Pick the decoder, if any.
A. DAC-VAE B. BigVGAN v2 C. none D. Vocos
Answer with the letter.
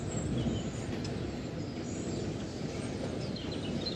C